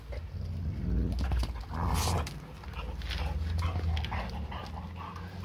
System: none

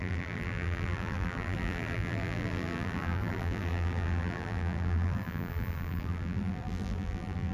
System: vocoder, BigVGAN v2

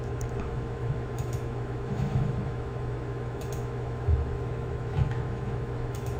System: autoencoder, DAC-VAE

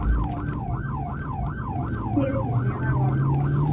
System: none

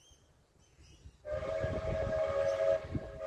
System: none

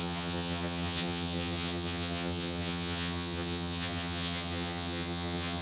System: vocoder, HiFi-GAN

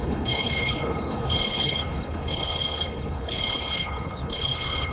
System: codec, HILCodec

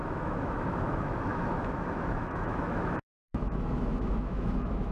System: autoencoder, DAC-VAE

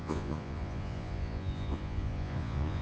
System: vocoder, Vocos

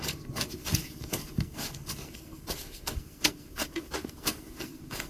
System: codec, SNAC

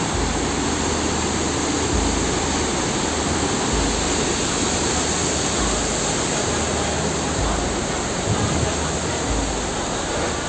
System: none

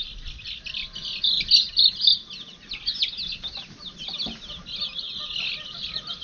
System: none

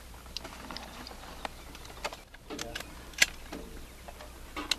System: none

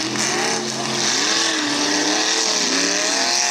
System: none